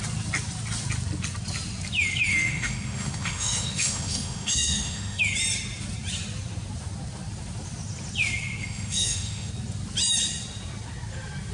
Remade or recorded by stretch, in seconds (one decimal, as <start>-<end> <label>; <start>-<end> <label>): 0.0-2.3 recorded; 2.3-5.2 remade; 5.2-8.6 recorded; 8.6-9.5 remade; 9.5-11.5 recorded